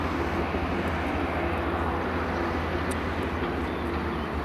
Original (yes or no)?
yes